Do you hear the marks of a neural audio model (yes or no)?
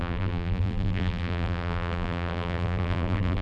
yes